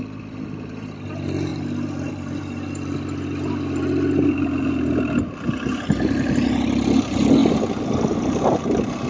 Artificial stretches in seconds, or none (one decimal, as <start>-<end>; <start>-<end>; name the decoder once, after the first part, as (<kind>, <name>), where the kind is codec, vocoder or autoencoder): none